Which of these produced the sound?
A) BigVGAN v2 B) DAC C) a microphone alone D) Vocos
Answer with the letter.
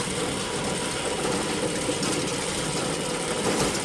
A